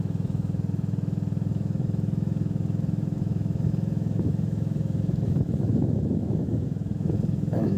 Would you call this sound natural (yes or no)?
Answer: no